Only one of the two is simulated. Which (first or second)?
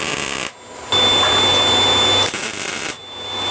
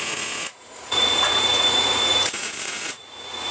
second